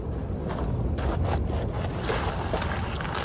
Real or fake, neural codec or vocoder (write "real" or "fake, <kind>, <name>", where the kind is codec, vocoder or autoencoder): real